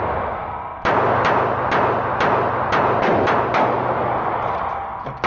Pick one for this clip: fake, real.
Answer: real